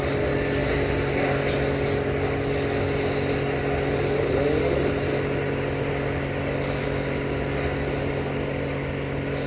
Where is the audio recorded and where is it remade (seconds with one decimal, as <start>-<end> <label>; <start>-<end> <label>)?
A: 0.0-9.5 recorded